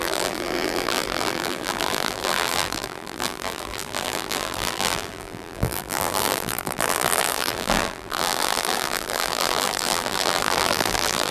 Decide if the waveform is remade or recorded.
remade